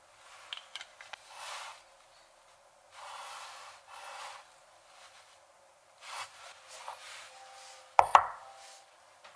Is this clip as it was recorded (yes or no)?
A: yes